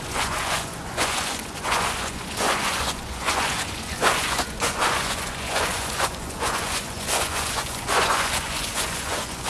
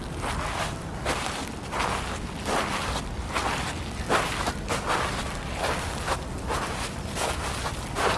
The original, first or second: second